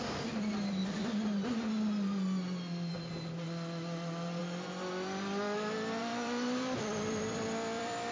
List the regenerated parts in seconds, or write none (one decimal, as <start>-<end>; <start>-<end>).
0.0-0.8; 3.3-8.1